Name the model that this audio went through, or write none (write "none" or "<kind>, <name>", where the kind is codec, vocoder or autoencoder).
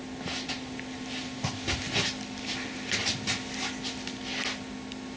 none